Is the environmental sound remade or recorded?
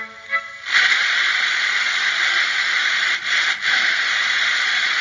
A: recorded